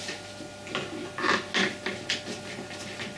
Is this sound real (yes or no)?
yes